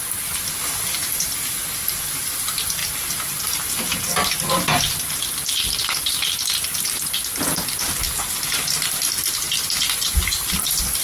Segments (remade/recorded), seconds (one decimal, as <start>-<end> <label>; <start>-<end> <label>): 0.0-11.0 recorded